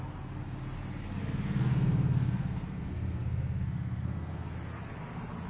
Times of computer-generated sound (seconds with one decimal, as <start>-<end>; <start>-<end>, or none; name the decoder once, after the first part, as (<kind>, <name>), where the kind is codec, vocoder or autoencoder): 1.2-4.5 (codec, SNAC)

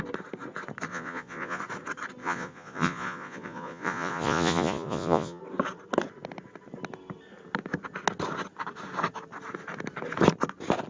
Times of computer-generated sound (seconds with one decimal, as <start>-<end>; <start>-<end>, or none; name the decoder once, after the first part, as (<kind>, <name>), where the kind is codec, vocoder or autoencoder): 0.9-1.6 (vocoder, Vocos); 2.2-5.4

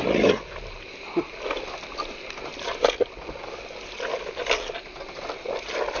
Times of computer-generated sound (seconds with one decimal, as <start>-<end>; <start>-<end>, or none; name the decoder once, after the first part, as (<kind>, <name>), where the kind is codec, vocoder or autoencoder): none

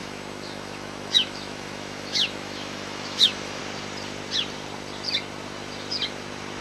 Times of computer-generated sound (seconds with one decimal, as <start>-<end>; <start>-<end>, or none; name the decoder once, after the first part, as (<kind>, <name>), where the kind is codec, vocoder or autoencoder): 0.0-3.6 (autoencoder, DAC-VAE)

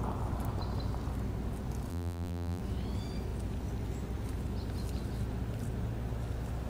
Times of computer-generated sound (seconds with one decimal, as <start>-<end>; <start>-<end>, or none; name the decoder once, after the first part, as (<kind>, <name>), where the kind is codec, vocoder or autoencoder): 1.9-2.6 (vocoder, BigVGAN v2)